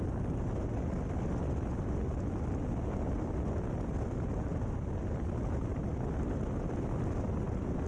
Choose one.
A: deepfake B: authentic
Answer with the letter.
B